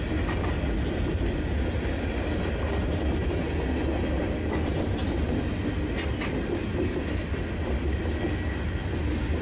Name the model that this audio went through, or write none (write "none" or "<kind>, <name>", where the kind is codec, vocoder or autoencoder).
none